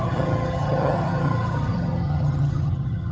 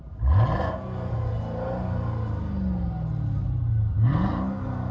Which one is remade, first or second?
first